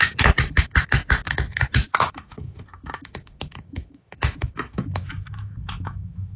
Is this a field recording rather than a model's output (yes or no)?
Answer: no